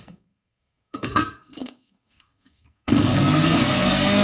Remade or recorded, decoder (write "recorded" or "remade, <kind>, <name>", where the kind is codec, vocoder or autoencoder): remade, codec, SNAC